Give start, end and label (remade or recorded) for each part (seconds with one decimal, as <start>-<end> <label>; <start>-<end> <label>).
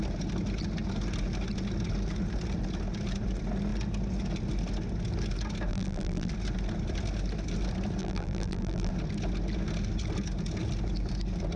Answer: 0.0-5.7 recorded; 5.7-6.3 remade; 6.3-8.0 recorded; 8.0-8.9 remade; 8.9-11.6 recorded